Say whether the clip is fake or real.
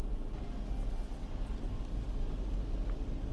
real